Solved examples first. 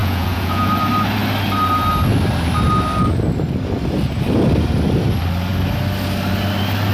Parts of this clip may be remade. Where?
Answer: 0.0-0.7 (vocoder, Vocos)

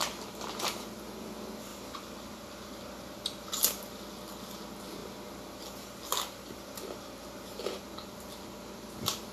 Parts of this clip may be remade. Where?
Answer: none